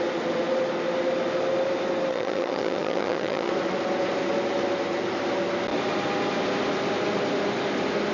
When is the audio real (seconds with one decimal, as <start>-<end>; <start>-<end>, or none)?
0.0-2.1; 3.5-8.1